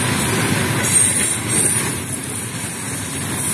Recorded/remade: recorded